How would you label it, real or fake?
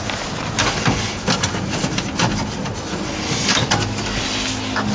real